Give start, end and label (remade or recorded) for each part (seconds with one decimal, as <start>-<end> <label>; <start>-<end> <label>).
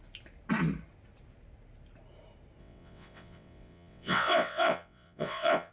0.0-2.6 recorded; 2.6-5.7 remade